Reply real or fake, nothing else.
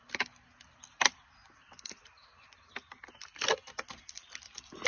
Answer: real